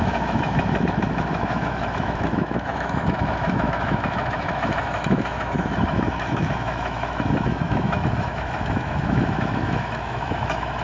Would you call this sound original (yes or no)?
no